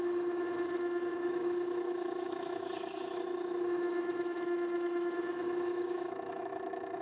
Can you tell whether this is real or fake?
fake